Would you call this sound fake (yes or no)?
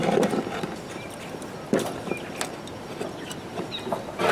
no